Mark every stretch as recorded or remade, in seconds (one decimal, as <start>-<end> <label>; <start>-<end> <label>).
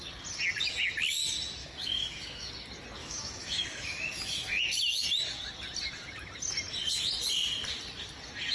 0.0-1.6 recorded; 1.6-2.5 remade; 2.5-3.0 recorded; 3.0-4.6 remade; 4.6-8.5 recorded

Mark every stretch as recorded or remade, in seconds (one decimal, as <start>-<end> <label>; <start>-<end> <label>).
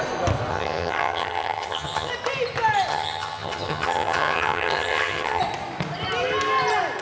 0.0-0.5 recorded; 0.5-2.1 remade; 2.1-2.9 recorded; 2.9-5.4 remade; 5.4-7.0 recorded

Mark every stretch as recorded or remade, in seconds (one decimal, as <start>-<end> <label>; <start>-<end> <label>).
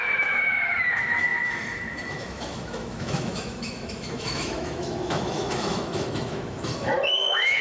0.0-7.6 remade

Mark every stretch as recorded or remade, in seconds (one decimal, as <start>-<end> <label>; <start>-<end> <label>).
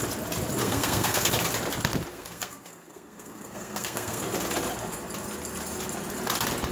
0.0-0.6 recorded; 0.6-1.3 remade; 1.3-2.1 recorded; 2.1-4.2 remade; 4.2-6.7 recorded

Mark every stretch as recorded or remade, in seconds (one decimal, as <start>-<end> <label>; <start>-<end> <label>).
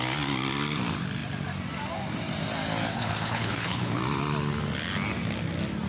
0.0-2.9 recorded; 2.9-4.0 remade; 4.0-5.9 recorded